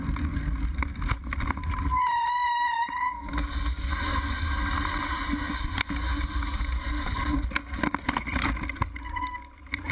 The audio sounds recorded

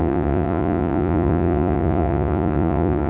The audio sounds remade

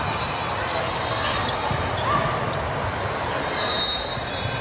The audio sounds recorded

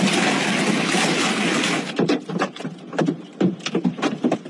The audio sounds recorded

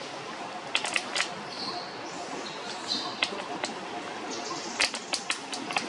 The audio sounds recorded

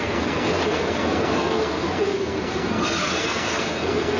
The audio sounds remade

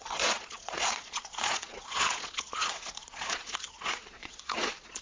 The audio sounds remade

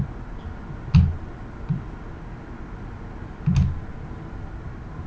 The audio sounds recorded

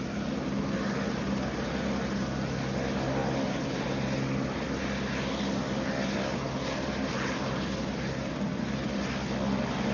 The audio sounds recorded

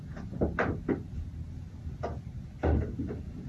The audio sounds recorded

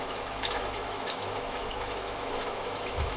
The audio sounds remade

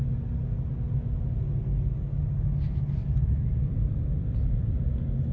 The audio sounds recorded